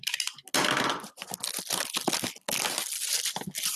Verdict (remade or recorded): recorded